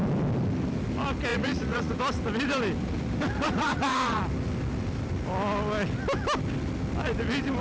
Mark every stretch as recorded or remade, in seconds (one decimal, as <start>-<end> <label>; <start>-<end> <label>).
0.0-1.3 recorded; 1.3-1.9 remade; 1.9-3.4 recorded; 3.4-4.2 remade; 4.2-7.6 recorded